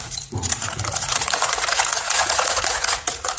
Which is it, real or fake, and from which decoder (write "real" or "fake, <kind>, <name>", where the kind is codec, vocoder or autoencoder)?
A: fake, vocoder, Vocos